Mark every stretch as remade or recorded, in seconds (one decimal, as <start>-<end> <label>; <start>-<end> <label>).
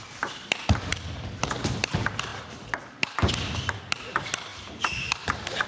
0.0-4.5 recorded; 4.5-5.7 remade